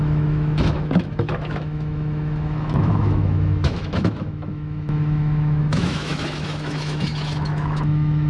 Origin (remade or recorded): remade